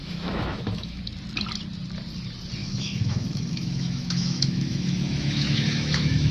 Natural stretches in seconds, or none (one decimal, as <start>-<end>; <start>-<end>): 1.0-2.6